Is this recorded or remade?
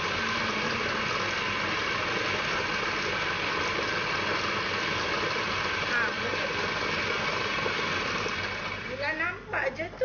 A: recorded